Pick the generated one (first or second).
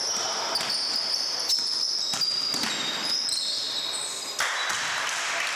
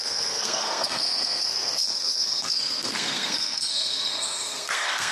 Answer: second